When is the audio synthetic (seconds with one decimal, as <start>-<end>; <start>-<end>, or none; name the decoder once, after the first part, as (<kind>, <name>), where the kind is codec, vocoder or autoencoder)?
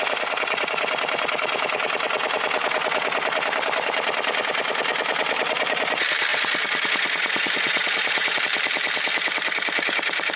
6.3-8.4 (vocoder, Vocos)